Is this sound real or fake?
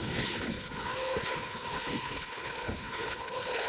fake